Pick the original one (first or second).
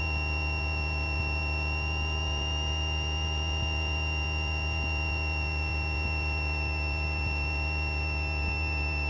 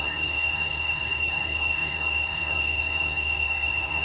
first